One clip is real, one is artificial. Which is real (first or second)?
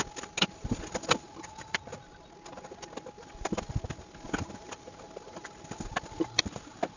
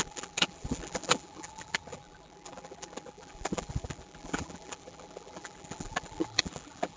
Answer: first